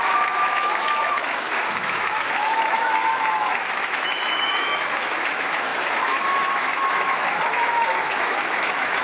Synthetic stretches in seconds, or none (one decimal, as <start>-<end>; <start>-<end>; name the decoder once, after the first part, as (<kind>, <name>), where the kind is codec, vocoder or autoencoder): 0.0-9.0 (autoencoder, DAC-VAE)